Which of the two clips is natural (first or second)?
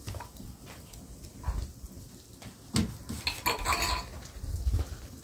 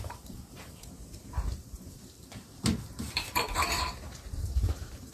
first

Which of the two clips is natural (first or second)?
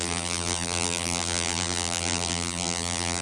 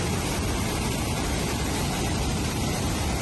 second